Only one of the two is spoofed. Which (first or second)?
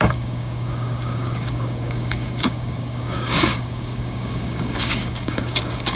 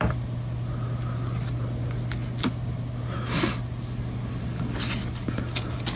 first